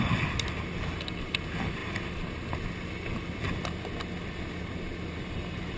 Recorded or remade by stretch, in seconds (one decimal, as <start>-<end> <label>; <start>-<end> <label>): 0.0-5.8 recorded